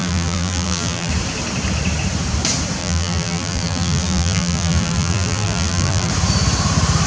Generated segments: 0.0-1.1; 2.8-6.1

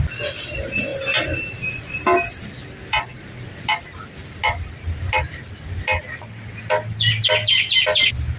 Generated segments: none

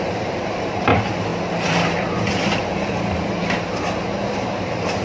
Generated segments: 0.0-1.3; 4.3-5.0

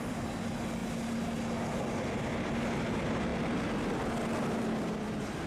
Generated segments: none

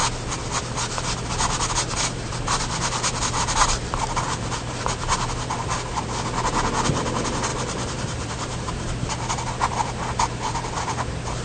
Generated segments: 7.5-8.7